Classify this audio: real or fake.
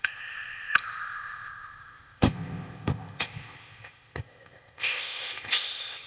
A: fake